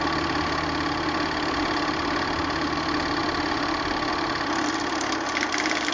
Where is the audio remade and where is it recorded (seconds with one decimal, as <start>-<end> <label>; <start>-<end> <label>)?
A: 0.0-5.9 recorded